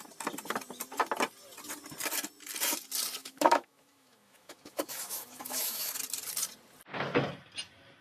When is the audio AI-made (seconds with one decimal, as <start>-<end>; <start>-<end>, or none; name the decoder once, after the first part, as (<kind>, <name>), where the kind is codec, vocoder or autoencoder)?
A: 3.2-5.9 (autoencoder, DAC-VAE)